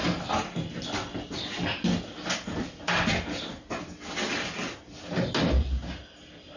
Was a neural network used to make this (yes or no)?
no